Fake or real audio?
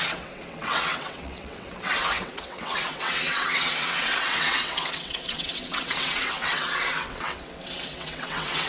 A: fake